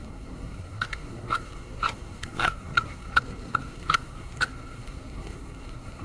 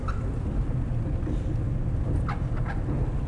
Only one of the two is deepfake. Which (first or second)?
first